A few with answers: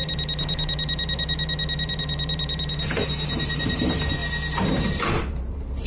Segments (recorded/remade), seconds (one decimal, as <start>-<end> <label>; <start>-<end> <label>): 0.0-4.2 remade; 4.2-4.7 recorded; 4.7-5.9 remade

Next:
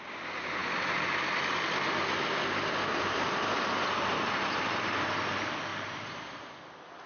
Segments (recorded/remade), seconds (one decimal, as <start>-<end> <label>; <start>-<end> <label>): 0.0-5.7 recorded; 5.7-6.5 remade; 6.5-7.1 recorded

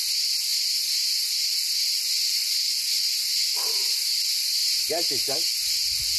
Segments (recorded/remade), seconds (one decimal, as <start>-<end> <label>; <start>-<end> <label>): 0.0-6.2 recorded

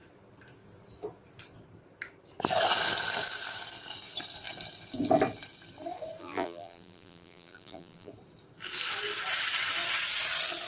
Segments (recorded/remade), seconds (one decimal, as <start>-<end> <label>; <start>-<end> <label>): 0.0-6.2 recorded; 6.2-8.1 remade; 8.1-10.7 recorded

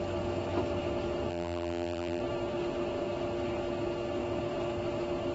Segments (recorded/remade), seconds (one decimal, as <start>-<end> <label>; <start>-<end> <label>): 0.0-1.3 recorded; 1.3-2.2 remade; 2.2-5.3 recorded